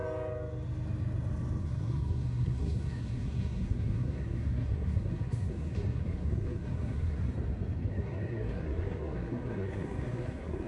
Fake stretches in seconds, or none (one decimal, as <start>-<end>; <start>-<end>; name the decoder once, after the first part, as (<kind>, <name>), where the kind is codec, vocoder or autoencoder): 1.6-7.2 (codec, SNAC); 7.9-10.7